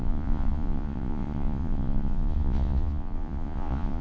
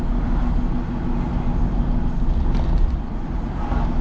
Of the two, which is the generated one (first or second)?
first